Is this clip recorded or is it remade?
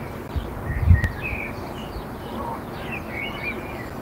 recorded